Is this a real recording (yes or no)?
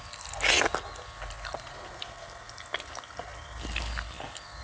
yes